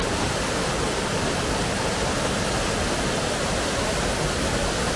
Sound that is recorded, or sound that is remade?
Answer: recorded